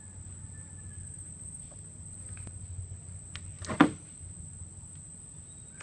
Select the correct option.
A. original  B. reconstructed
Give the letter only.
A